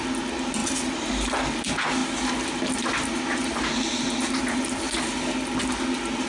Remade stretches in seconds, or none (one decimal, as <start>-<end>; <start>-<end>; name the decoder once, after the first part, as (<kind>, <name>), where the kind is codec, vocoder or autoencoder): 0.6-1.5 (vocoder, BigVGAN v2)